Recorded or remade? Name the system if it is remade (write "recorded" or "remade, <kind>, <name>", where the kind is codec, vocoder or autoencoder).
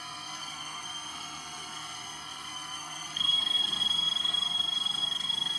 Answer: remade, codec, SNAC